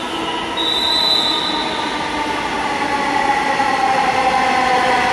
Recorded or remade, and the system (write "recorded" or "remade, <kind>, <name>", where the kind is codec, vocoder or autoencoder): recorded